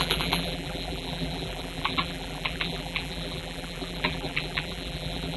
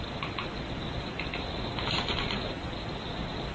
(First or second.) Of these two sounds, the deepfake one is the first